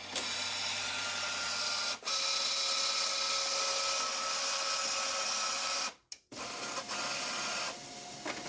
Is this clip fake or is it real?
real